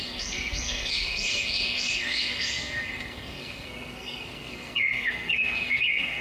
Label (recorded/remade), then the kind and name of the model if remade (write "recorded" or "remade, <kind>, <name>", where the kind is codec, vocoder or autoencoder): remade, codec, SNAC